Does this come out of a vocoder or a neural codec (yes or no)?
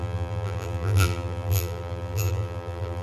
yes